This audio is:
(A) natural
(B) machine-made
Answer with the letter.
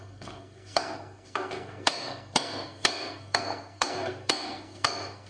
B